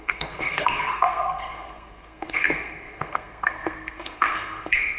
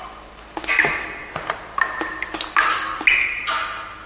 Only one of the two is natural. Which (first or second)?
second